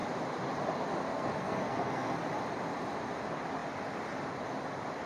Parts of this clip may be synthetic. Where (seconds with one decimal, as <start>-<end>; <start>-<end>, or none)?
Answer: 1.1-2.2